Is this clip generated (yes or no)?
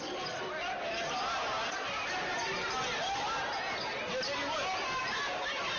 no